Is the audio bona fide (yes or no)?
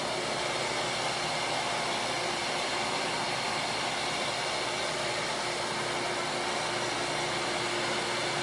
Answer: yes